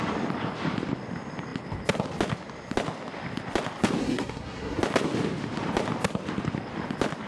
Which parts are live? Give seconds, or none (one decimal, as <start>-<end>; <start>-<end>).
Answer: 0.0-4.0; 4.8-7.3